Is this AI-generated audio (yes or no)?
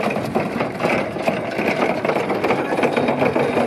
no